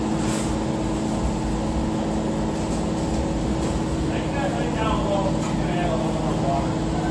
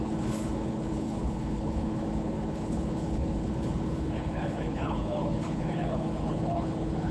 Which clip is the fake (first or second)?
second